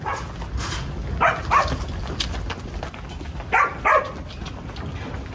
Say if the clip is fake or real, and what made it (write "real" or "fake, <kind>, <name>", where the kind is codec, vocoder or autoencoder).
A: real